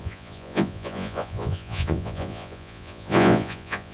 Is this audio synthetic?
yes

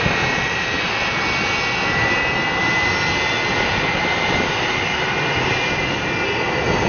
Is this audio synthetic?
no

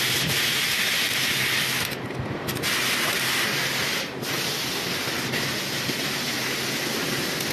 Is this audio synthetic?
no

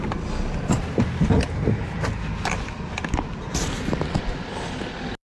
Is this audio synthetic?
no